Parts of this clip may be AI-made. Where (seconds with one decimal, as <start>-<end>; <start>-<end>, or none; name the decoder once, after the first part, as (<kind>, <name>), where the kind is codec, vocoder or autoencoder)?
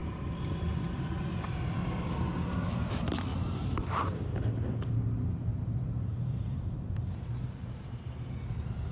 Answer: 3.3-4.0 (vocoder, BigVGAN v2); 5.5-7.9